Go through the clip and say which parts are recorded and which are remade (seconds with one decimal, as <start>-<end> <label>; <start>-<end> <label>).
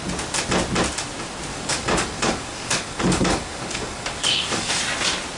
0.0-1.5 recorded; 1.5-4.7 remade; 4.7-5.4 recorded